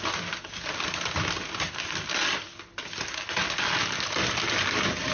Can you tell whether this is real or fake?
real